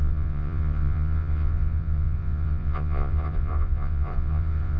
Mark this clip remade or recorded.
remade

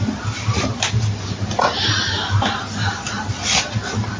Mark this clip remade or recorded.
recorded